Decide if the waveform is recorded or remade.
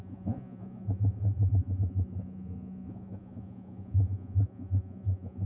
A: remade